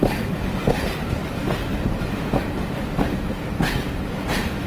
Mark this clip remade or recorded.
recorded